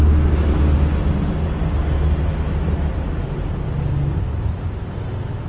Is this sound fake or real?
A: real